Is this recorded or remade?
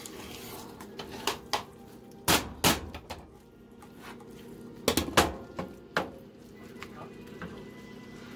recorded